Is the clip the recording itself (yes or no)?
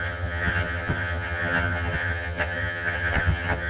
no